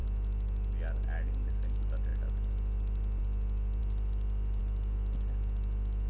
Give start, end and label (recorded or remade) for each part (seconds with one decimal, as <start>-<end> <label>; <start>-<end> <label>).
0.0-6.1 recorded